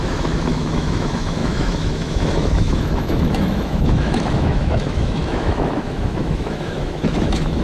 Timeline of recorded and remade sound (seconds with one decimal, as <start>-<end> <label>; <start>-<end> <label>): 0.0-7.6 remade